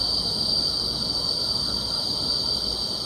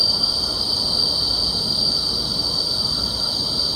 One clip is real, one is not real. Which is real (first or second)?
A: first